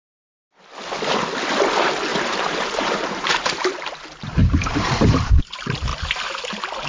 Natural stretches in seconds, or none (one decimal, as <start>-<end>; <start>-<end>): 0.0-2.1; 3.7-4.4; 5.4-5.9; 6.4-6.9